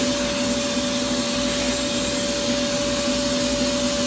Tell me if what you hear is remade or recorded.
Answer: recorded